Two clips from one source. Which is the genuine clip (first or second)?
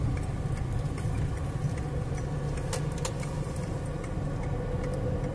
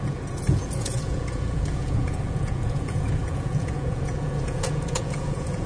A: first